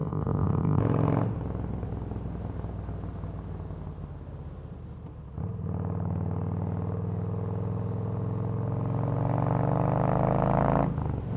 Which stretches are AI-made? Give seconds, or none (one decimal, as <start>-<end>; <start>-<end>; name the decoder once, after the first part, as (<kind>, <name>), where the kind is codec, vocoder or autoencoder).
0.0-0.8 (codec, ZipCodec)